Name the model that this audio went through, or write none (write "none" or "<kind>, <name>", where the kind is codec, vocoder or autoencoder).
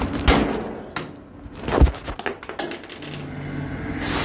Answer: none